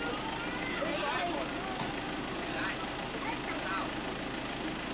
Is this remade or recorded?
recorded